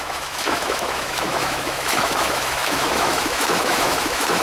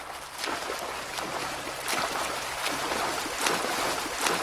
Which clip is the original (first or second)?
second